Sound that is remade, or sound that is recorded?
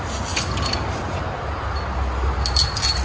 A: recorded